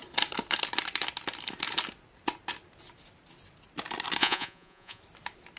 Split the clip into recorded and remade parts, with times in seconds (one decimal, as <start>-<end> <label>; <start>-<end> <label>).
0.0-4.2 recorded; 4.2-5.0 remade; 5.0-5.6 recorded

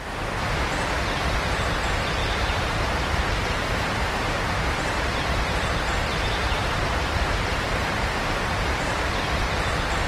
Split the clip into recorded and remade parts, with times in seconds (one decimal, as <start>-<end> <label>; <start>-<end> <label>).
0.0-2.2 recorded; 2.2-5.2 remade; 5.2-6.1 recorded; 6.1-9.1 remade; 9.1-10.1 recorded